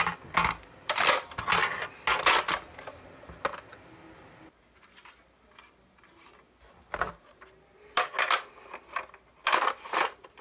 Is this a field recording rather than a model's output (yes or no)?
yes